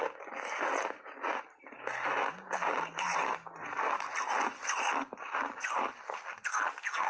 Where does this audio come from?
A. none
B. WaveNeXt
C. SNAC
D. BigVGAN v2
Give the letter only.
A